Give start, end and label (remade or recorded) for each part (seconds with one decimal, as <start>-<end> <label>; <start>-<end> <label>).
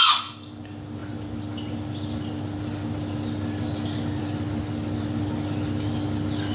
0.0-6.5 recorded